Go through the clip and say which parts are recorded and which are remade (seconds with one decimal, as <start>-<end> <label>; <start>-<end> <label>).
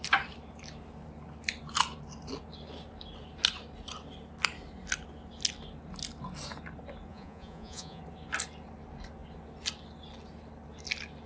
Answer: 0.0-7.1 recorded; 7.1-8.0 remade; 8.0-11.3 recorded